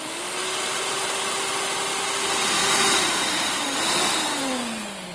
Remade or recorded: recorded